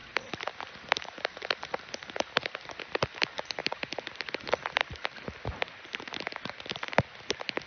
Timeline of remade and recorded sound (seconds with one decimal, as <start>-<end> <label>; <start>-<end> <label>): 0.0-7.7 recorded